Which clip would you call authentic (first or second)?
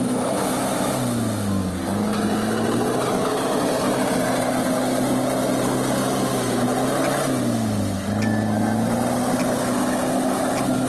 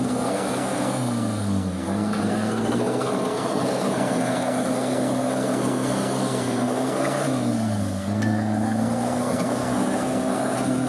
first